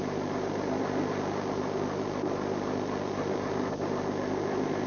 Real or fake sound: real